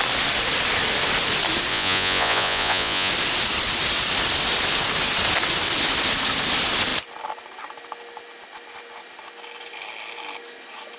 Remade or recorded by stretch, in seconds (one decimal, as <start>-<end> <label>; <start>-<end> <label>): 0.0-1.7 recorded; 1.7-3.1 remade; 3.1-11.0 recorded